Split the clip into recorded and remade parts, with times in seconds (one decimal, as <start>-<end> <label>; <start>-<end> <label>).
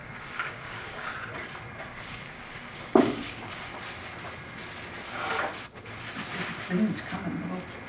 0.0-1.1 remade; 1.1-1.9 recorded; 1.9-3.7 remade; 3.7-7.9 recorded